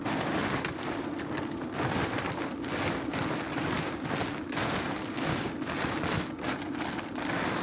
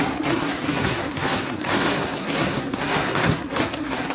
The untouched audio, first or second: first